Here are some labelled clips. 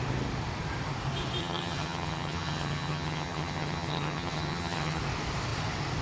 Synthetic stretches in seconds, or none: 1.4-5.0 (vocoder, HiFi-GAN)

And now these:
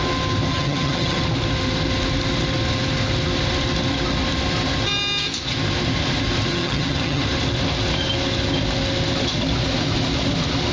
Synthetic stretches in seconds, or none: 0.5-1.2 (vocoder, HiFi-GAN); 6.5-7.2